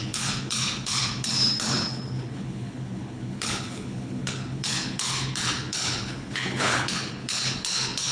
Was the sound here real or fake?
fake